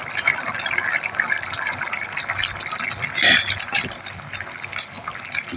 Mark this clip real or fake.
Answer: real